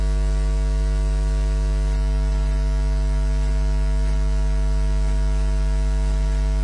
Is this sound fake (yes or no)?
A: no